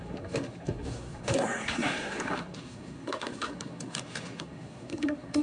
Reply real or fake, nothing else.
fake